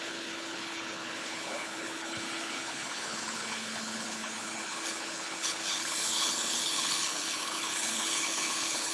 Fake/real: fake